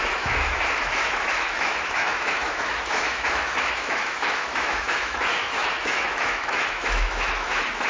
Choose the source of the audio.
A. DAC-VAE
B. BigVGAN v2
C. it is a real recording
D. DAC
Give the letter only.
A